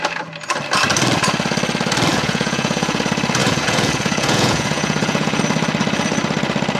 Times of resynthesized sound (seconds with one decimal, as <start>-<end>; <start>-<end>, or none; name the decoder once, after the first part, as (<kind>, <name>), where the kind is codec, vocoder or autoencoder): 2.1-3.0 (vocoder, Vocos); 3.4-5.4